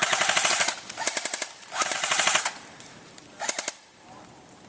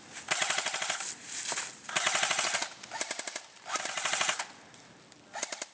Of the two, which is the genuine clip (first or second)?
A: second